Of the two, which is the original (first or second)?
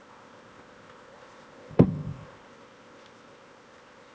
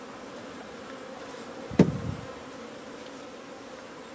second